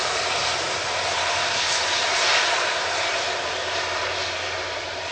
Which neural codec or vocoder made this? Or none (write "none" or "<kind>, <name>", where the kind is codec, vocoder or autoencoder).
none